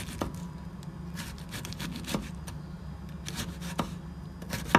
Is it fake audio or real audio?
real